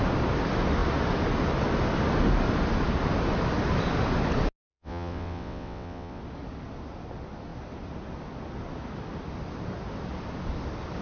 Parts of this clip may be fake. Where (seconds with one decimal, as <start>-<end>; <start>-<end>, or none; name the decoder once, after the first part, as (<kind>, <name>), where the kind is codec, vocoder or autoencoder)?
4.7-6.2 (vocoder, WaveNeXt)